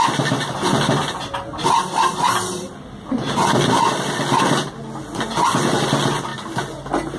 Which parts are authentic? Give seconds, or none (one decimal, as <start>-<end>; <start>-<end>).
0.0-7.2